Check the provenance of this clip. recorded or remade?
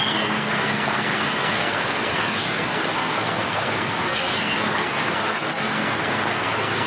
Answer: remade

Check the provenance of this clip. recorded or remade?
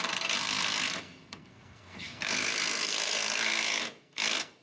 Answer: remade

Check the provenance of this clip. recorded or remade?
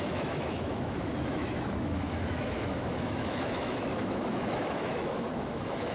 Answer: remade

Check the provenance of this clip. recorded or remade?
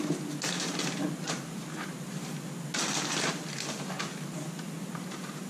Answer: recorded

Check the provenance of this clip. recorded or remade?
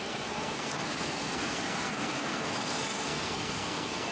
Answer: remade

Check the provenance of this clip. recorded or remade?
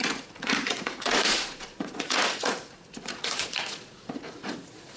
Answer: remade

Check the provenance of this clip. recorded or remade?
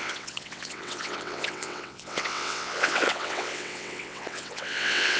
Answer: remade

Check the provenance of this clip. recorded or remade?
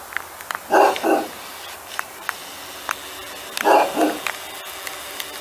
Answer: recorded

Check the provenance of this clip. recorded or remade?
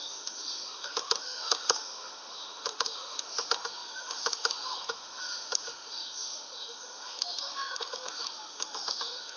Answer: remade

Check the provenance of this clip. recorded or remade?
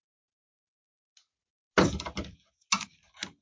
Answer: recorded